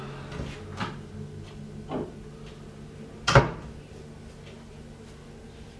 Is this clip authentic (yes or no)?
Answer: yes